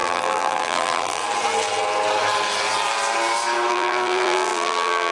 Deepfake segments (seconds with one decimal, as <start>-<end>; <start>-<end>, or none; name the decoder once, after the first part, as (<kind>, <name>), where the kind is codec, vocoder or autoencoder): 0.0-1.2 (vocoder, BigVGAN v2); 3.7-5.1